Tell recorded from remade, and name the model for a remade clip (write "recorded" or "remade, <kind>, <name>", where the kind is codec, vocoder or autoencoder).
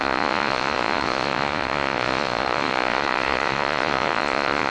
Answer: remade, vocoder, Vocos